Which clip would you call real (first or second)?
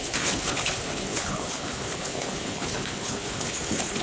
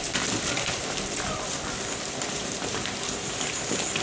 second